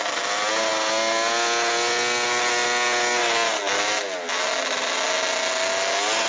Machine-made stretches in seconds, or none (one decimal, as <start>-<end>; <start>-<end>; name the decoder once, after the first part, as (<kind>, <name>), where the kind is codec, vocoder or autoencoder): none